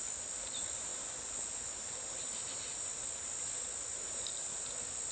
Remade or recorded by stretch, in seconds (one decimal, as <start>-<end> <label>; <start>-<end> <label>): 0.0-5.1 recorded